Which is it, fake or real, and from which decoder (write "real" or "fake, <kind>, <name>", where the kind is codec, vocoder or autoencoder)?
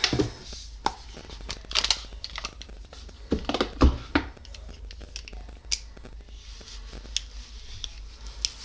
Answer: real